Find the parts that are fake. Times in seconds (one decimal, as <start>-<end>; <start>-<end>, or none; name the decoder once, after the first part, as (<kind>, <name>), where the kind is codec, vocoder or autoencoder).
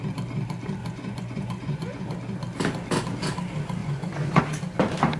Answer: 0.8-2.0 (vocoder, Vocos); 3.8-4.4